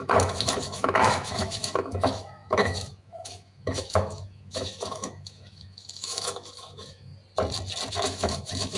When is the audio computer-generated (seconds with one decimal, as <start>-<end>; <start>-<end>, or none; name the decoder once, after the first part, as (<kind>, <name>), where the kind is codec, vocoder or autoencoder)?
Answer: 0.0-7.1 (autoencoder, DAC-VAE); 7.9-8.8